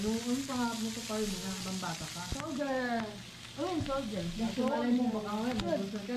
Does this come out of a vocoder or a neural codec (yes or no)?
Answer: no